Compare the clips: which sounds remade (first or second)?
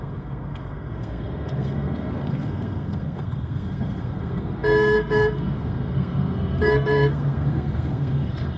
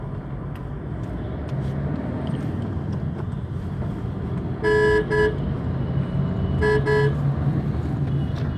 first